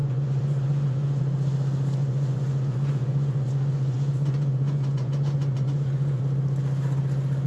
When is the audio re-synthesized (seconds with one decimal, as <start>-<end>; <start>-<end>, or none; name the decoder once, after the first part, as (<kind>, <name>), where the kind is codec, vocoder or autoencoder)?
0.0-1.2 (vocoder, Vocos); 2.0-6.2